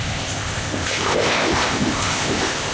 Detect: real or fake fake